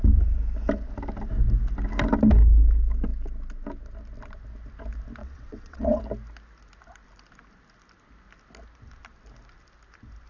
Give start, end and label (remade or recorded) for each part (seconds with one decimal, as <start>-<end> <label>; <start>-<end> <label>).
0.0-5.2 recorded; 5.2-6.0 remade; 6.0-10.3 recorded